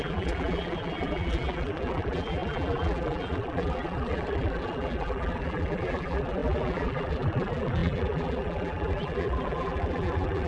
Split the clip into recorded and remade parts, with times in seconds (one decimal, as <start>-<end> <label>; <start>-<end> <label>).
0.0-10.5 remade